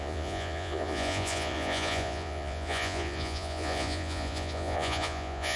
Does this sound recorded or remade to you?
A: remade